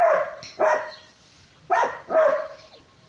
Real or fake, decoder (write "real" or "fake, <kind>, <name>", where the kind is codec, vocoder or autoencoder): fake, vocoder, BigVGAN v2